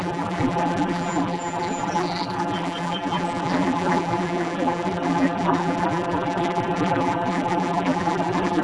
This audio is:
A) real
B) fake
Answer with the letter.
B